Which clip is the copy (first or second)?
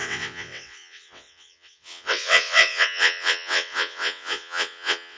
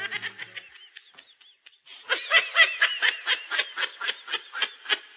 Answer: first